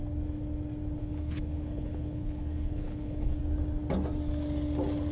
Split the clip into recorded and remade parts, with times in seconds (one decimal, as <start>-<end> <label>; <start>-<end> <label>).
0.0-1.0 recorded; 1.0-3.4 remade; 3.4-5.1 recorded